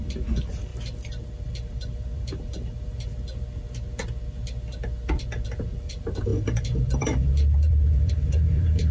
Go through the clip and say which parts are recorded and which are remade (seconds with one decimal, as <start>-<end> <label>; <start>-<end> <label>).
0.0-0.7 remade; 0.7-1.4 recorded; 1.4-3.1 remade; 3.1-5.6 recorded; 5.6-8.9 remade